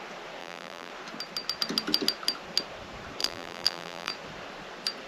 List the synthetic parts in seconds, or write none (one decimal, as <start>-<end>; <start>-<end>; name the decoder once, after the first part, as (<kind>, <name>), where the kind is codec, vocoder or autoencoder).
0.4-0.9 (vocoder, BigVGAN v2); 3.2-4.1